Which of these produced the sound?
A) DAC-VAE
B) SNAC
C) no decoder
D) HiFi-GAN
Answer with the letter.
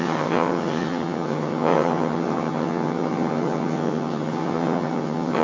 D